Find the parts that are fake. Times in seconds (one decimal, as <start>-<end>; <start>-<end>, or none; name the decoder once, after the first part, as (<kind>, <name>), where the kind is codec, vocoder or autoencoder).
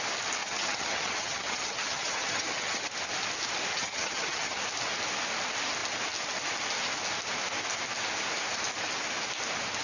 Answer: 0.4-2.8 (vocoder, HiFi-GAN); 3.7-4.6